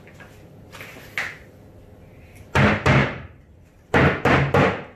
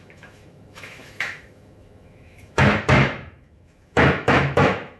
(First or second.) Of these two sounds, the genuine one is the first